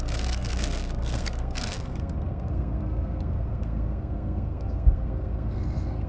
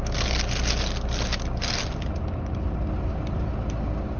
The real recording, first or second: second